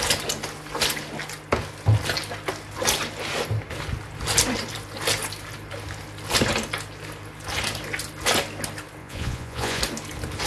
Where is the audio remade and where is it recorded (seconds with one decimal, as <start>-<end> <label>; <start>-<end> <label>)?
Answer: 0.0-9.0 recorded; 9.0-9.8 remade; 9.8-10.5 recorded